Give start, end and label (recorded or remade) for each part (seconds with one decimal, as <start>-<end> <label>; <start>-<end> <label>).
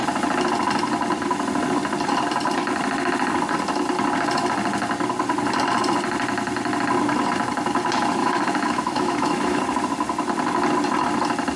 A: 0.0-8.2 recorded; 8.2-9.6 remade; 9.6-11.6 recorded